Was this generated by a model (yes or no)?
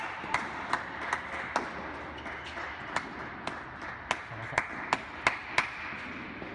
no